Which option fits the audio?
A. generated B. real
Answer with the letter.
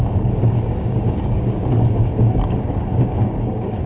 A